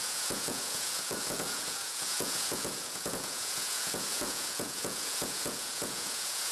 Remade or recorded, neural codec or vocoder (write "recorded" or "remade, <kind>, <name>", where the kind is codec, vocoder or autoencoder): remade, vocoder, Vocos